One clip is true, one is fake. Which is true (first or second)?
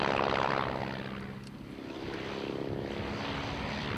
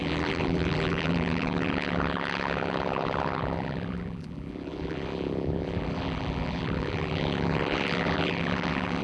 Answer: first